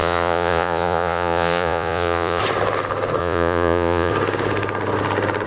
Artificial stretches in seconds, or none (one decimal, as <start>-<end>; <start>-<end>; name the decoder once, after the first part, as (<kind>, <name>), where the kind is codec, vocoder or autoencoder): 0.0-2.4 (vocoder, Vocos); 3.2-4.1